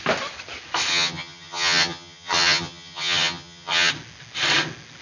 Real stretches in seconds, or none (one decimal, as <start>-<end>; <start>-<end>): 0.0-0.9; 3.9-5.0